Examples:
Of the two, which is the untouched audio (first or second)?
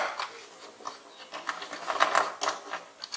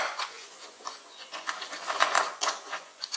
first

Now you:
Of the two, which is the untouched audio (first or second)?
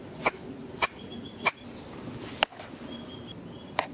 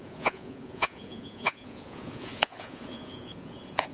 first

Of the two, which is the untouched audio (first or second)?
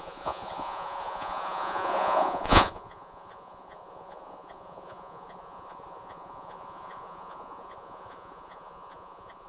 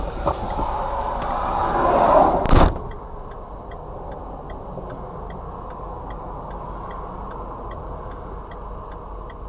second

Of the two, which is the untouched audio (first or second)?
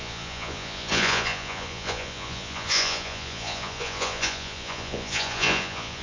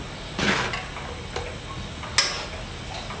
second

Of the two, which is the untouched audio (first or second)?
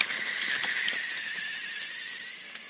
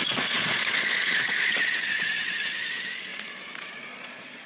first